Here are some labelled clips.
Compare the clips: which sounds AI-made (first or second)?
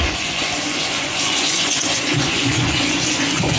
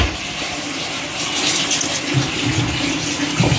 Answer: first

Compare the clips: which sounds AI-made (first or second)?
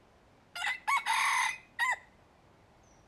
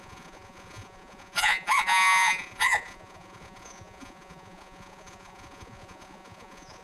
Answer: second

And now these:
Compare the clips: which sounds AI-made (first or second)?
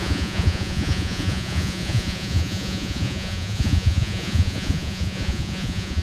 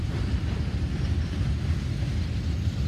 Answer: first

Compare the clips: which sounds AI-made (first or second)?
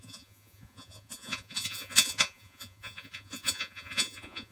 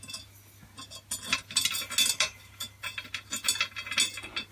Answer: first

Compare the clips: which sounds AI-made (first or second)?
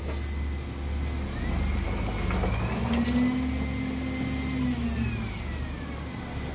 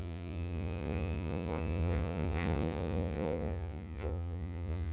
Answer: second